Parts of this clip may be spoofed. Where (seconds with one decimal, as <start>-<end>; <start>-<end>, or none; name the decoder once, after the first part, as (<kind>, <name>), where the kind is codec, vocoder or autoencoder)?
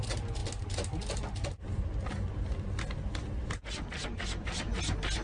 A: none